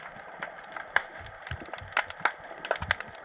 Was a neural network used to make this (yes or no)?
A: no